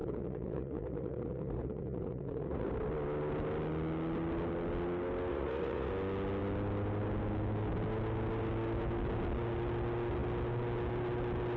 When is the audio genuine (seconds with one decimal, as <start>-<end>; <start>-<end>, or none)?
2.7-5.3; 5.9-11.6